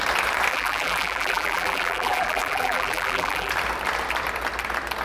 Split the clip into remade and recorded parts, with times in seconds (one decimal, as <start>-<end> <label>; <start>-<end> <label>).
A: 0.0-0.5 recorded; 0.5-3.5 remade; 3.5-5.0 recorded